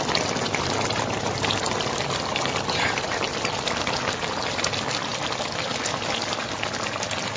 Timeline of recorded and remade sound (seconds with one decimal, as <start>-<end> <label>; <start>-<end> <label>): 0.0-7.4 recorded